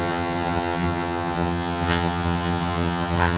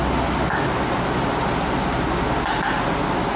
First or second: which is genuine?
second